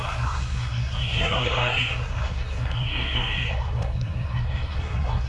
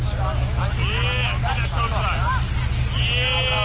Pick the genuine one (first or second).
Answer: second